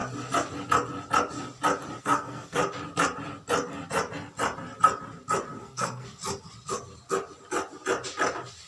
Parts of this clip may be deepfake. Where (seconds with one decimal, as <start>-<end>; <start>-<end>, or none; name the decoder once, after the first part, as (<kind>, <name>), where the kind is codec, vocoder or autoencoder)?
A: 2.0-2.6 (codec, SNAC); 5.6-6.2